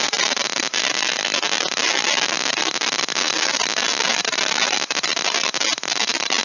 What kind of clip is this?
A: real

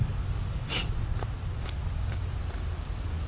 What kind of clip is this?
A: real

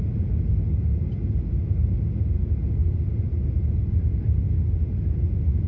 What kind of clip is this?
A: real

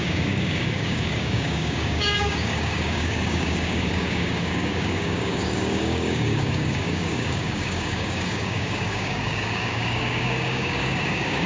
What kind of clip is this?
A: fake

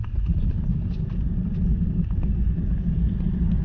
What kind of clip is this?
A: real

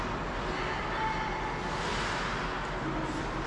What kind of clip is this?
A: real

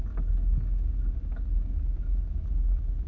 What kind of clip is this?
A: real